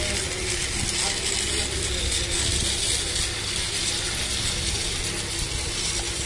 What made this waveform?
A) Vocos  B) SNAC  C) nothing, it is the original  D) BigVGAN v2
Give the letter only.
C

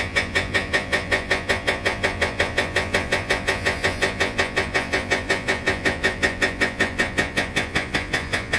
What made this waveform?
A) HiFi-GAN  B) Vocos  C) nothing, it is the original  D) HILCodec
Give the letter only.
B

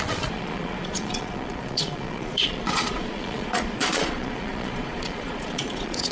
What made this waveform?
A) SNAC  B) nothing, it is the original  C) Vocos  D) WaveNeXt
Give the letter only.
C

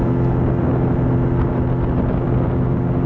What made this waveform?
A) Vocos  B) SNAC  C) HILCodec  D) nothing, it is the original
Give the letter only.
D